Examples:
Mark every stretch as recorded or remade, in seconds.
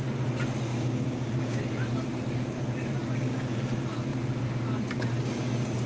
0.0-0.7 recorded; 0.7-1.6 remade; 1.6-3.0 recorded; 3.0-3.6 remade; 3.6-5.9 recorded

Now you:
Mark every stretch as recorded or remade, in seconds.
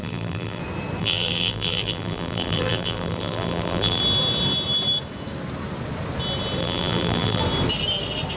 0.0-0.6 remade; 0.6-1.0 recorded; 1.0-4.0 remade; 4.0-6.6 recorded; 6.6-7.4 remade; 7.4-8.4 recorded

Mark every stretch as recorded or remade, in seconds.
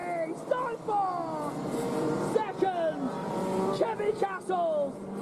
0.0-5.2 recorded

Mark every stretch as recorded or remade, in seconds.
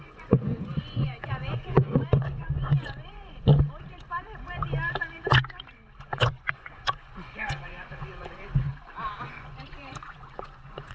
0.0-3.5 remade; 3.5-6.0 recorded; 6.0-8.7 remade; 8.7-9.2 recorded; 9.2-10.9 remade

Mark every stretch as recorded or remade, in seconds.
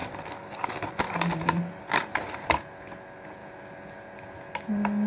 0.0-5.1 recorded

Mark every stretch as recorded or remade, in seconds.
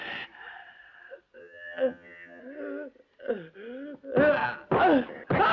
0.0-1.4 recorded; 1.4-2.4 remade; 2.4-5.5 recorded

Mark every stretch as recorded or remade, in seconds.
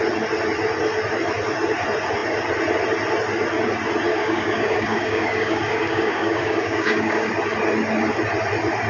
0.0-4.1 recorded; 4.1-7.3 remade; 7.3-8.9 recorded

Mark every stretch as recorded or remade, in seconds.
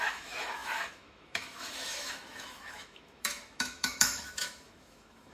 0.0-5.3 remade